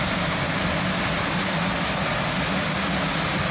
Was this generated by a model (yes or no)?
no